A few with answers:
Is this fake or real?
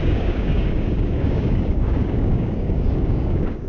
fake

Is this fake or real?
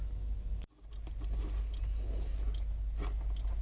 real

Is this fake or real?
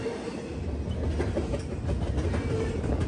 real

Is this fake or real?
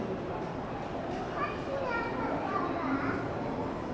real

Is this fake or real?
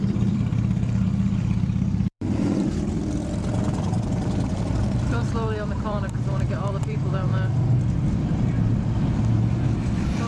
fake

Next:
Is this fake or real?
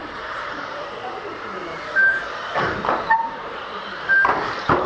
fake